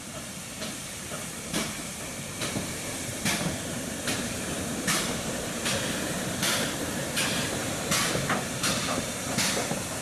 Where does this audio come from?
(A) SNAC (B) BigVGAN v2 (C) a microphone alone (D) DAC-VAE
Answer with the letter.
B